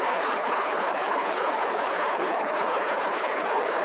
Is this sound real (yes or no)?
no